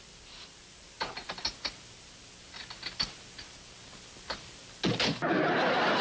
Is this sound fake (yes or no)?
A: no